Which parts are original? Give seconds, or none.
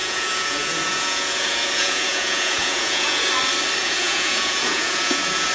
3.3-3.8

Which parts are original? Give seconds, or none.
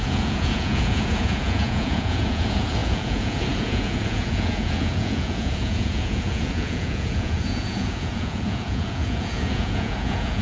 none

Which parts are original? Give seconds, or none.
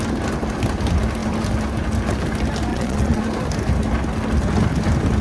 0.0-2.7; 3.2-5.2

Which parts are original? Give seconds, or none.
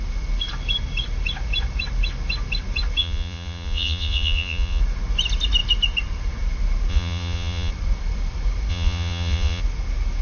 0.0-3.0; 4.8-6.9; 7.7-8.7; 9.6-10.2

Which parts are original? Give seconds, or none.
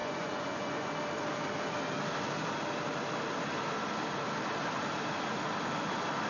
0.9-6.3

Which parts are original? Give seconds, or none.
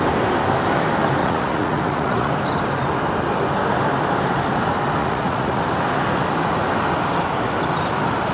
0.0-1.2; 2.3-5.0; 5.6-8.3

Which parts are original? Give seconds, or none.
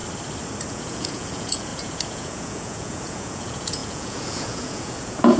0.0-0.7